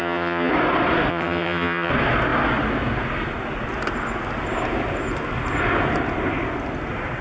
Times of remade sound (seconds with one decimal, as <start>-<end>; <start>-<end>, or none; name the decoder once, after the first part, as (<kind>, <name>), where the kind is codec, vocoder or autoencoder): 0.0-0.5 (vocoder, HiFi-GAN); 1.1-1.9